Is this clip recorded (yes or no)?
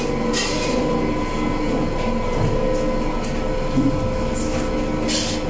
yes